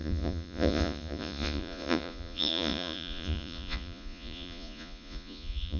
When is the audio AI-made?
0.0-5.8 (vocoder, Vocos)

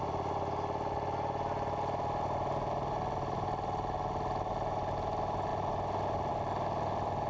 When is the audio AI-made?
none